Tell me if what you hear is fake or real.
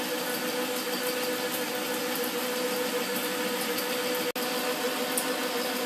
real